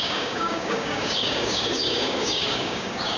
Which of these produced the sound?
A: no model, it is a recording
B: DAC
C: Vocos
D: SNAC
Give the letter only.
B